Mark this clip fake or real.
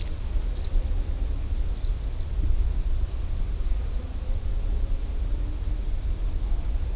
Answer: real